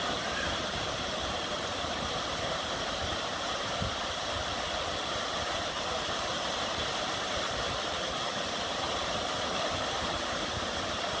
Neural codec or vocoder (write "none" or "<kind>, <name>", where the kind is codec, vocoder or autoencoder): vocoder, BigVGAN v2